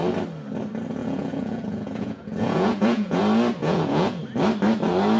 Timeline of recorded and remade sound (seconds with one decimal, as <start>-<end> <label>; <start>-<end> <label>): 0.0-1.0 recorded; 1.0-3.2 remade; 3.2-3.6 recorded; 3.6-4.2 remade; 4.2-5.2 recorded